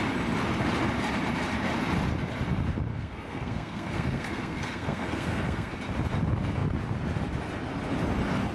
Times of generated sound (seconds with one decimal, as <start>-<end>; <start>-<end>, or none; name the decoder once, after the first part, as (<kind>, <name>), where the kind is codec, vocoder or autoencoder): 2.9-5.7 (codec, SNAC)